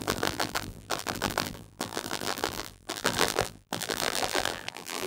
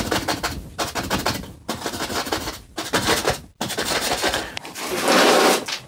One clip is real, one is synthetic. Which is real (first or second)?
second